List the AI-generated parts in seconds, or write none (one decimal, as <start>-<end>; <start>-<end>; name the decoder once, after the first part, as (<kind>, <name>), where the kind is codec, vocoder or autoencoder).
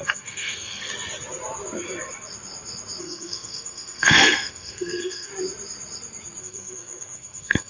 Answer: 0.0-0.9 (codec, SNAC); 3.0-5.3; 6.4-7.7